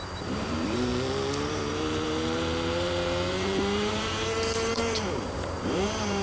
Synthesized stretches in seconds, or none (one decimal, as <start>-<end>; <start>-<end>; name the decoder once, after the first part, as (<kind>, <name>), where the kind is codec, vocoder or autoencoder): 0.0-0.9 (vocoder, BigVGAN v2); 1.4-6.2